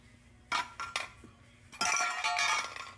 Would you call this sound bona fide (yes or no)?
yes